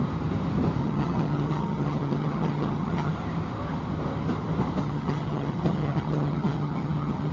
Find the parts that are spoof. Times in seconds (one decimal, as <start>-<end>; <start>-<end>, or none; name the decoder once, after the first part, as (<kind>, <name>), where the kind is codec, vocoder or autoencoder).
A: 0.8-3.1 (vocoder, HiFi-GAN); 4.8-7.3